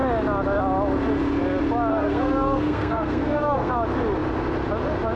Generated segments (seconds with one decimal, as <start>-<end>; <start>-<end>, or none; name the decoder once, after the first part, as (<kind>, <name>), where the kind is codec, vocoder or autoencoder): 1.9-3.7 (codec, SNAC)